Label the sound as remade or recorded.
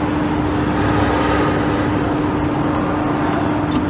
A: recorded